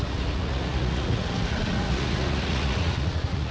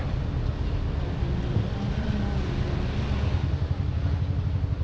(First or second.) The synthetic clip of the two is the first